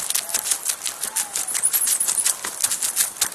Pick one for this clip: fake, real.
real